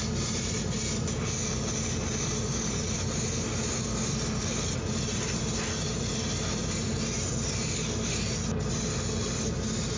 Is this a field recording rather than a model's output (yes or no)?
yes